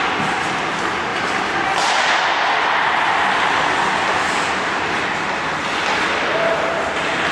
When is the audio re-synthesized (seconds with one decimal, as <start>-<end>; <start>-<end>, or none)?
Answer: none